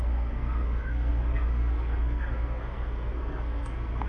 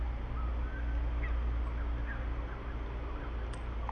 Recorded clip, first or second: second